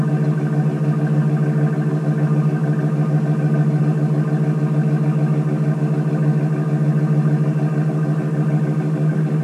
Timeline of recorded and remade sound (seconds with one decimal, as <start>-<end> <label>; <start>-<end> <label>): 0.0-9.4 recorded